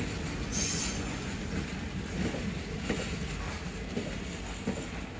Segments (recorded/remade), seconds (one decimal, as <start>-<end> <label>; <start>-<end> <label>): 0.0-0.5 recorded; 0.5-1.4 remade; 1.4-5.2 recorded